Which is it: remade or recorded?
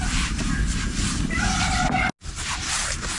recorded